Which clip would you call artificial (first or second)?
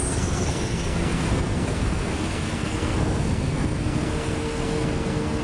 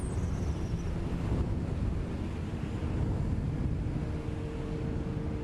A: first